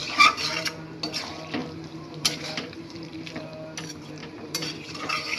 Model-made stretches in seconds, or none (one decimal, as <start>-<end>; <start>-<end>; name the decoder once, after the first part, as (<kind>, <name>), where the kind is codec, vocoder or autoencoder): 1.6-3.5 (vocoder, BigVGAN v2); 4.2-4.7